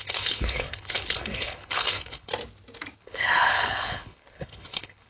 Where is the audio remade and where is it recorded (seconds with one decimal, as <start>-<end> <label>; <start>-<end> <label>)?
0.0-2.3 remade; 2.3-3.0 recorded; 3.0-5.1 remade